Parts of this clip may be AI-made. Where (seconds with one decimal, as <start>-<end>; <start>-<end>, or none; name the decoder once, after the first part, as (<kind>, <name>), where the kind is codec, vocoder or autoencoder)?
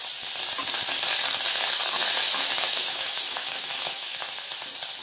1.5-4.5 (autoencoder, DAC-VAE)